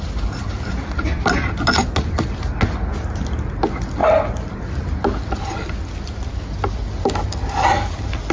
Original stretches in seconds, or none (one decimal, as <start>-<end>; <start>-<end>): 0.0-4.0; 4.7-8.3